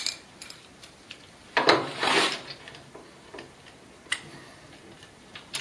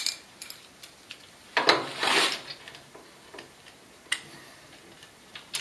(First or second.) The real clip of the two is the second